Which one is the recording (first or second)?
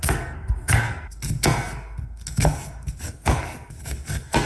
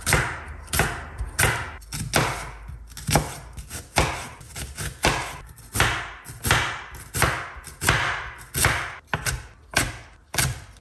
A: second